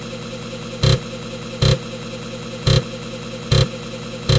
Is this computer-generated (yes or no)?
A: no